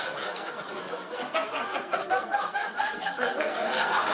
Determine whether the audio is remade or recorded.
remade